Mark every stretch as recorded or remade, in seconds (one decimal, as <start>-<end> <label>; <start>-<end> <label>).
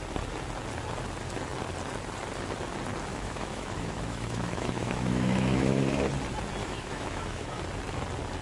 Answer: 0.0-3.1 recorded; 3.1-5.8 remade; 5.8-6.6 recorded; 6.6-7.6 remade; 7.6-8.4 recorded